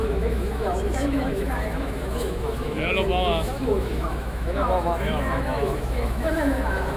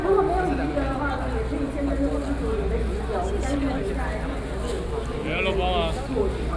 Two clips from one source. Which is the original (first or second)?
second